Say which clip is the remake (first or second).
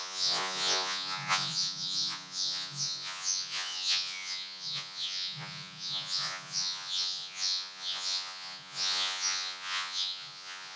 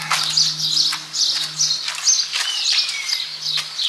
first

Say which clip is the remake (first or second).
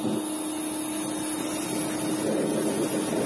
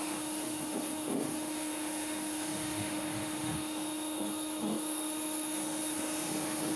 second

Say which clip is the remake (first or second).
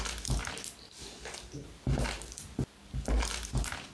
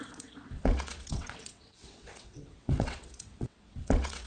second